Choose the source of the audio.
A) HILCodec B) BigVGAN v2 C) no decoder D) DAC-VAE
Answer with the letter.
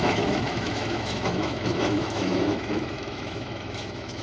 D